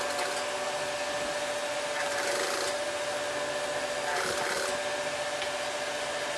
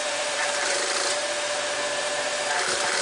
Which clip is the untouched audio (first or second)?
first